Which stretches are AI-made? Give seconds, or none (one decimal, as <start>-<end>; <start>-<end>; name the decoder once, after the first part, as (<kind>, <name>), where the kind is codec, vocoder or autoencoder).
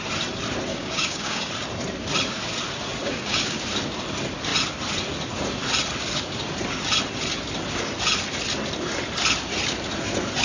0.7-1.5 (codec, DAC); 3.0-3.6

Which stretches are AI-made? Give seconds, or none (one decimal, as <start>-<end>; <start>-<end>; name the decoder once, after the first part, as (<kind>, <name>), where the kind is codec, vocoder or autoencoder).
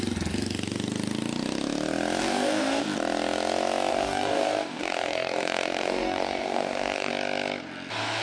2.2-2.8 (codec, DAC); 3.9-7.1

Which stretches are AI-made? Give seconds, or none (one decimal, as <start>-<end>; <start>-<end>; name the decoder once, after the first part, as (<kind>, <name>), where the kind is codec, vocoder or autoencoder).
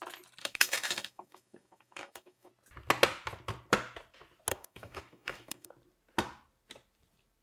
0.4-2.5 (codec, DAC); 4.5-5.7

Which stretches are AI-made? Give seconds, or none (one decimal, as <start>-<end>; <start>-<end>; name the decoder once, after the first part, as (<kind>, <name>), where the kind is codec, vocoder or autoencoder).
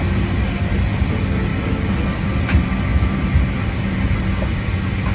none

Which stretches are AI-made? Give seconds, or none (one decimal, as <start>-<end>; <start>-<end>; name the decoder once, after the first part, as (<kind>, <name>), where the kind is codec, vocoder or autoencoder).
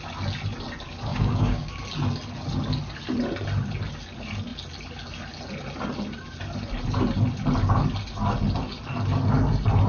1.1-1.8 (codec, DAC)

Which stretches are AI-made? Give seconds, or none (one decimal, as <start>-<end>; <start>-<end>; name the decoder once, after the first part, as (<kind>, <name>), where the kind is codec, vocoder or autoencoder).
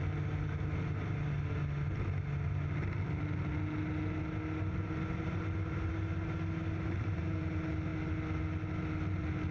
none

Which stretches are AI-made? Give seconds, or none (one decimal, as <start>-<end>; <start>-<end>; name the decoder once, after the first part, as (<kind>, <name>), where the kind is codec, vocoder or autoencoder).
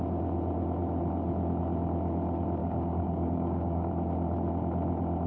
2.6-3.9 (codec, DAC)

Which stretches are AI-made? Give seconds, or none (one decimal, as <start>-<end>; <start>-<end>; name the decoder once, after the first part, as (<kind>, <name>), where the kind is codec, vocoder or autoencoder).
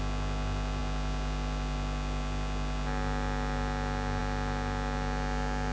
none